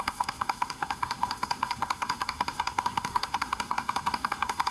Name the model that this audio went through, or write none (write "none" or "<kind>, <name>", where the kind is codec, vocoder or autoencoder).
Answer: codec, SNAC